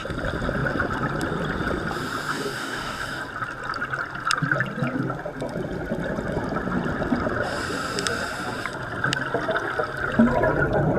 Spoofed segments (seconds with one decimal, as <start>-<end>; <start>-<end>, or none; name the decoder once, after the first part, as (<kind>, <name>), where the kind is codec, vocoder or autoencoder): 2.3-3.2 (codec, DAC)